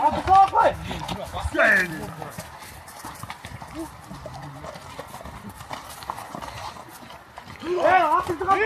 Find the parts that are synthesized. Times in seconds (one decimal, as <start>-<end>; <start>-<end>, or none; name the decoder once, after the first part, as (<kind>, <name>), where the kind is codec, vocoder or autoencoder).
1.3-5.9 (vocoder, BigVGAN v2)